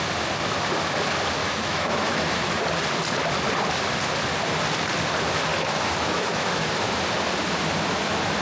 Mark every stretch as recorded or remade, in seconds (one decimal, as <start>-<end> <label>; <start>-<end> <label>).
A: 0.0-1.4 recorded; 1.4-2.6 remade; 2.6-5.5 recorded; 5.5-6.6 remade; 6.6-8.4 recorded